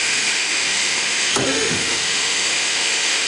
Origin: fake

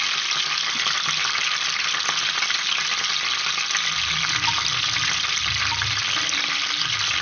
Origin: real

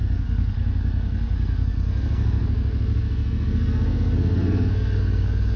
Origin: fake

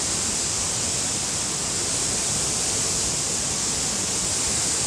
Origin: real